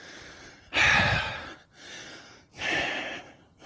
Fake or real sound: real